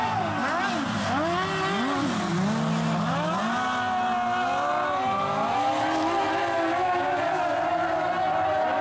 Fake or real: real